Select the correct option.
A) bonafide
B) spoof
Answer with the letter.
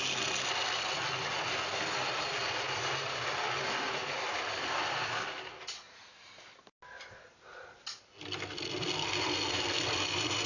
A